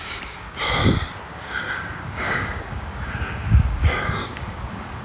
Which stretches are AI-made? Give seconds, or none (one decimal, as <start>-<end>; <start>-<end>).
0.0-0.8; 1.3-5.0